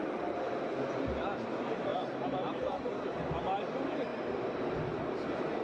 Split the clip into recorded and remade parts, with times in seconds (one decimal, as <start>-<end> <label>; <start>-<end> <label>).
0.0-1.9 recorded; 1.9-2.9 remade; 2.9-5.6 recorded